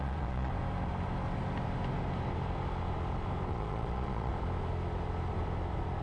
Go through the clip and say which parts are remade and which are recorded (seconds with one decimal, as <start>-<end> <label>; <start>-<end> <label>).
0.0-0.5 remade; 0.5-3.5 recorded; 3.5-4.3 remade; 4.3-6.0 recorded

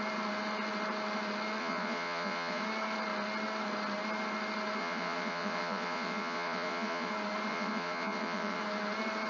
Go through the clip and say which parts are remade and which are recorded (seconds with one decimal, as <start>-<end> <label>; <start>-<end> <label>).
0.0-1.6 recorded; 1.6-2.6 remade; 2.6-4.8 recorded; 4.8-7.1 remade; 7.1-7.5 recorded; 7.5-8.6 remade; 8.6-9.3 recorded

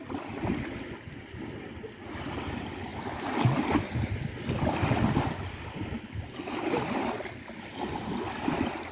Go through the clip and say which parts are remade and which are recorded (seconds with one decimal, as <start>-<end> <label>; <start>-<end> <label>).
0.0-8.9 recorded

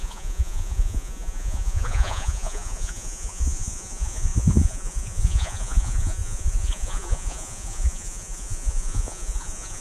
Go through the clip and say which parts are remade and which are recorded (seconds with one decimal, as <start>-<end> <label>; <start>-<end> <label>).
0.0-9.8 remade

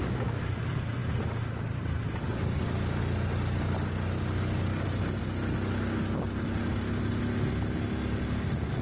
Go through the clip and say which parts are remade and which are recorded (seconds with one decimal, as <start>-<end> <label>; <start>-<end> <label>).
0.0-8.8 recorded

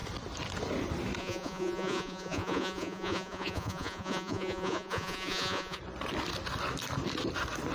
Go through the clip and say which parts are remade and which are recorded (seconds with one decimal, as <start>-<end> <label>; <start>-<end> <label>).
0.0-1.2 recorded; 1.2-5.8 remade; 5.8-7.7 recorded

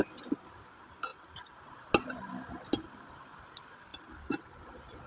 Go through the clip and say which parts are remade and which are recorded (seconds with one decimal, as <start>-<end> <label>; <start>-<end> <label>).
0.0-5.1 recorded